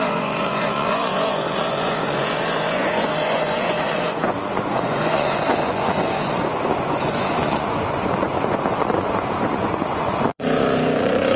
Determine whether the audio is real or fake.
fake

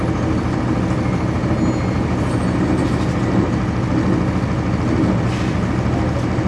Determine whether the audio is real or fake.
real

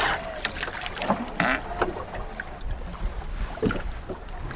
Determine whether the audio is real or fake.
real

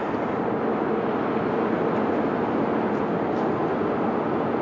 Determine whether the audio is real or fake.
real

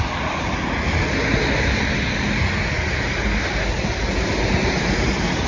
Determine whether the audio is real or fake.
real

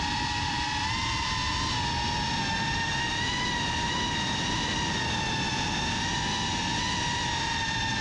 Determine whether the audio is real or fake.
fake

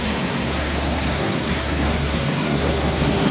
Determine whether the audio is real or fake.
fake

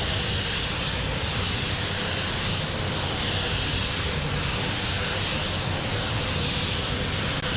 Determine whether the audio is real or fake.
real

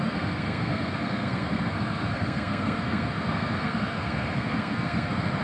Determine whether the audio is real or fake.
fake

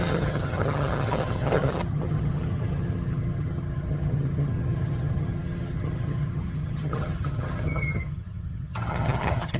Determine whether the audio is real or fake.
fake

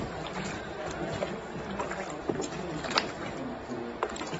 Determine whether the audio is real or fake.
real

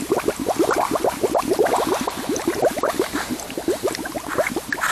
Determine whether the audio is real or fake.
real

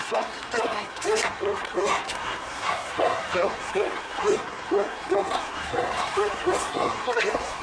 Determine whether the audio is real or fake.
fake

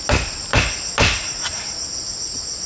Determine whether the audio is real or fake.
real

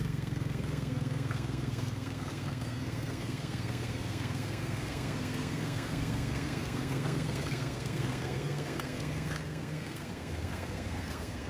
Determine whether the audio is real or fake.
fake